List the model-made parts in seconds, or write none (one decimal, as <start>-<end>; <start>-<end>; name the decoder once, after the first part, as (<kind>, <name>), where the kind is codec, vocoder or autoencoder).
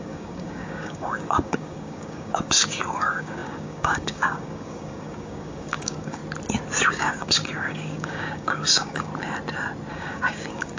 0.0-6.2 (codec, DAC); 6.9-9.1; 9.9-10.8